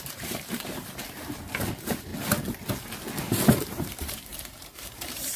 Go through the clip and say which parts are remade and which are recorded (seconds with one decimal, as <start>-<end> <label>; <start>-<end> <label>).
0.0-2.1 remade; 2.1-3.5 recorded; 3.5-5.4 remade